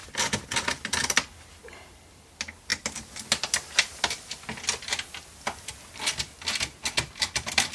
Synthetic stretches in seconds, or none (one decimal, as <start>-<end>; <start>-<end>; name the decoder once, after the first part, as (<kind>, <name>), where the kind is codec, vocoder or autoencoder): 0.0-2.7 (vocoder, BigVGAN v2); 7.1-7.7